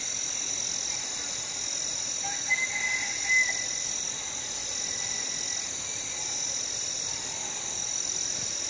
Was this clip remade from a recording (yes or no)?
no